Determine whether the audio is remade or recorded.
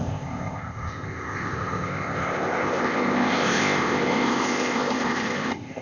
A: remade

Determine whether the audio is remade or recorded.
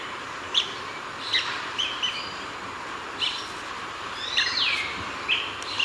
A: recorded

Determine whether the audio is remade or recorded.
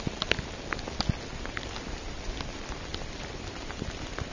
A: recorded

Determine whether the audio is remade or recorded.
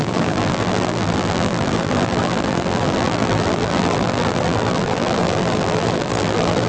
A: remade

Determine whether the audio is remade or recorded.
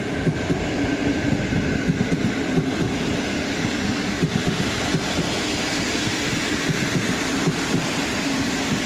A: recorded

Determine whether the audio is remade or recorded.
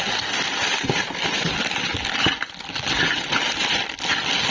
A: recorded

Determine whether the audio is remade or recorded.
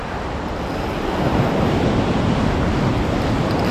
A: remade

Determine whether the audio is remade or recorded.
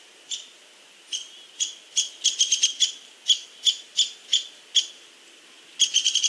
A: recorded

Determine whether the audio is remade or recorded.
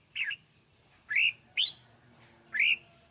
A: recorded